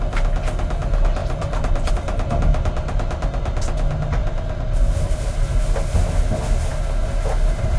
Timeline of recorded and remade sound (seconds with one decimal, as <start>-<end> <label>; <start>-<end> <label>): 0.0-1.2 recorded; 1.2-1.9 remade; 1.9-7.8 recorded

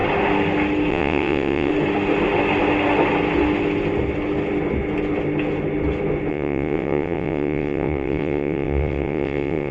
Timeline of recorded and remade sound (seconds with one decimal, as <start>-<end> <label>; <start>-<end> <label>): 0.0-0.9 recorded; 0.9-1.7 remade; 1.7-6.3 recorded; 6.3-9.7 remade

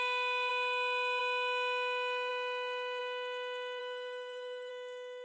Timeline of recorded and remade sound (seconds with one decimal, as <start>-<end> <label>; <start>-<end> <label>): 0.0-3.8 recorded; 3.8-4.7 remade; 4.7-5.2 recorded

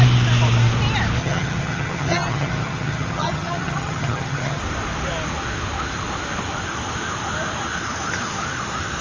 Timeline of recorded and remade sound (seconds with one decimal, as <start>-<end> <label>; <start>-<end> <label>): 0.0-1.2 recorded; 1.2-4.6 remade; 4.6-9.0 recorded

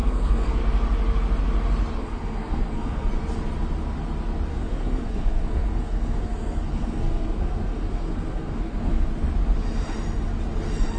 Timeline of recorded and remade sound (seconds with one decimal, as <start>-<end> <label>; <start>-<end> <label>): 0.0-0.6 remade; 0.6-2.0 recorded; 2.0-3.1 remade; 3.1-4.5 recorded; 4.5-9.1 remade; 9.1-11.0 recorded

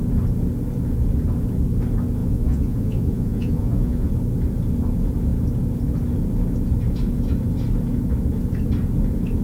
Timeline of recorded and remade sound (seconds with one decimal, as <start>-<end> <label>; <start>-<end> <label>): 0.0-2.2 recorded; 2.2-4.1 remade; 4.1-9.4 recorded

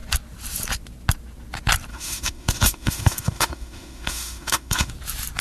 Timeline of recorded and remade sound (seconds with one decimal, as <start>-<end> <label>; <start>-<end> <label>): 0.0-1.9 recorded; 1.9-4.9 remade; 4.9-5.4 recorded

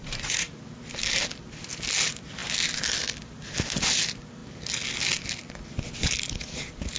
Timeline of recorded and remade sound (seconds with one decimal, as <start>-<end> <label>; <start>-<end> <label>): 0.0-0.6 remade; 0.6-7.0 recorded